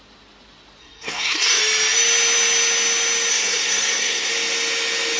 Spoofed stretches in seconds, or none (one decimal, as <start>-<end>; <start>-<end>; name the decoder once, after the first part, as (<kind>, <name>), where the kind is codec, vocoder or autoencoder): 0.8-1.6 (codec, SNAC); 3.3-4.3